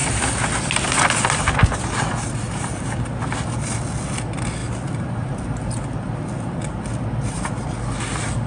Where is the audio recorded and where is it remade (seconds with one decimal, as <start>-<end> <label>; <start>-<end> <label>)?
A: 0.0-8.5 recorded